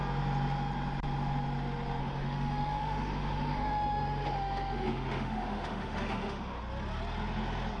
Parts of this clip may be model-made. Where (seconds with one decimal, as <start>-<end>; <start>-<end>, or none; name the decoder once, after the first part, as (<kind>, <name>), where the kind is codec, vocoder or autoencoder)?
2.0-6.6 (autoencoder, DAC-VAE)